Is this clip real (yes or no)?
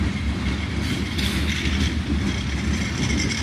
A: yes